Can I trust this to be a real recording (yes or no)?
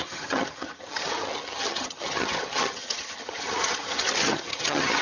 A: no